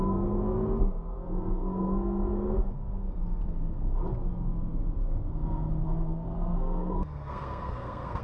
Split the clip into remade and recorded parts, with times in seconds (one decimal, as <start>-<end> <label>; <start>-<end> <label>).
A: 0.0-4.0 remade; 4.0-5.3 recorded; 5.3-8.2 remade